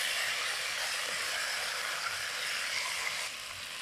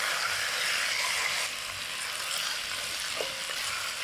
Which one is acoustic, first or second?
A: second